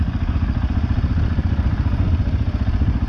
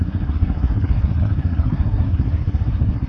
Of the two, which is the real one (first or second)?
first